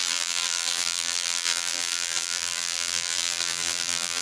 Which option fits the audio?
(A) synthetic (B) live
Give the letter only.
A